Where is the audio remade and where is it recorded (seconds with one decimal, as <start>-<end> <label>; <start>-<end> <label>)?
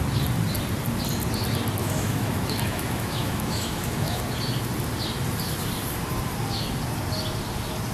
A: 0.0-1.8 recorded; 1.8-4.2 remade; 4.2-7.9 recorded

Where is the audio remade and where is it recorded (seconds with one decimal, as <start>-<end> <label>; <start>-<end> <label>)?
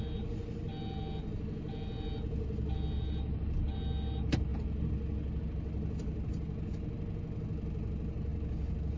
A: 0.0-9.0 recorded